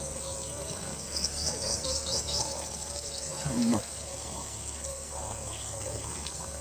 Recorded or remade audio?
remade